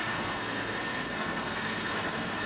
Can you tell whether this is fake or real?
fake